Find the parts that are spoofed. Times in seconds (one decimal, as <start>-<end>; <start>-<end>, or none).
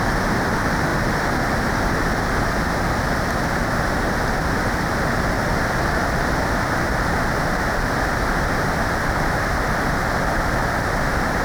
0.9-2.5; 10.6-11.4